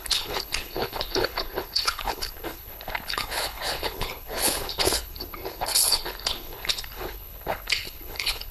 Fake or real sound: fake